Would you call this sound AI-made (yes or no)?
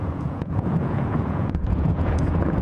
yes